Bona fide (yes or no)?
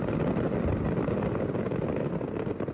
yes